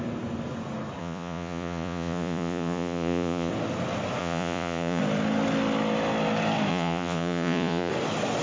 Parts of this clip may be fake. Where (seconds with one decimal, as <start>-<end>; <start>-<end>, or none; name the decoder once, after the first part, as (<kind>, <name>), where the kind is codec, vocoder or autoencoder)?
1.0-3.5 (vocoder, Vocos); 4.2-5.0; 6.7-7.9